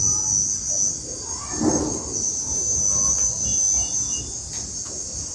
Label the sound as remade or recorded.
recorded